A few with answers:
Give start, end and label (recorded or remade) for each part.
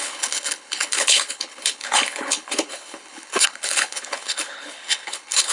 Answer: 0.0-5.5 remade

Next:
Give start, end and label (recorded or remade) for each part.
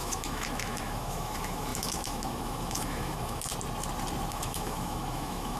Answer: 0.0-3.5 remade; 3.5-4.3 recorded; 4.3-5.6 remade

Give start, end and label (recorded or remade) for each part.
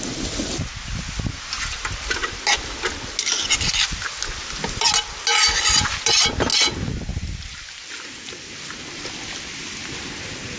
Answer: 0.0-10.6 recorded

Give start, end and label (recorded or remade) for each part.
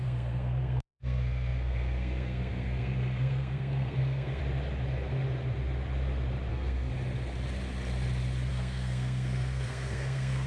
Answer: 0.0-4.4 remade; 4.4-6.5 recorded; 6.5-6.9 remade; 6.9-8.5 recorded; 8.5-10.5 remade